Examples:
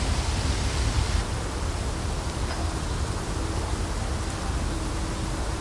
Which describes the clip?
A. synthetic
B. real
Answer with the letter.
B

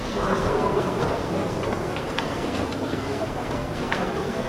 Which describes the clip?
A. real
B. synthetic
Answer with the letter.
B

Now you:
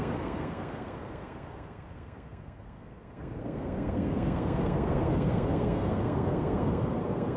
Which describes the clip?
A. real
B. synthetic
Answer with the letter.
B